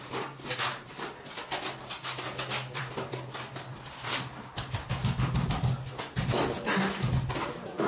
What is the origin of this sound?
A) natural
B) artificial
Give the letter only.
A